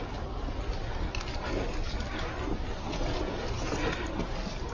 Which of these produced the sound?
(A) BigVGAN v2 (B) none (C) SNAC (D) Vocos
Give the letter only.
B